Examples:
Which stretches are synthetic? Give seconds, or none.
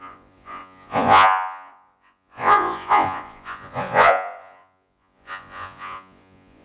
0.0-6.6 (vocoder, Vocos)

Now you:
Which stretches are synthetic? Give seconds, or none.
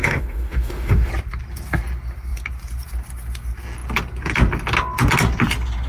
0.0-1.1 (autoencoder, DAC-VAE)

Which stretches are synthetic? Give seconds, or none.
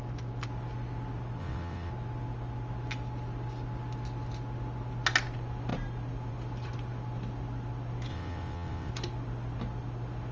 1.4-1.9 (vocoder, WaveNeXt); 8.1-8.9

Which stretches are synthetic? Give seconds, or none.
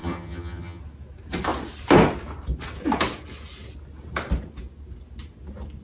0.0-0.8 (vocoder, HiFi-GAN)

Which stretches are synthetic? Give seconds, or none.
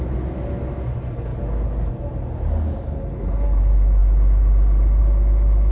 none